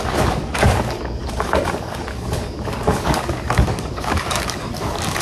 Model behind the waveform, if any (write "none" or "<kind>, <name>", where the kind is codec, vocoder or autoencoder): codec, DAC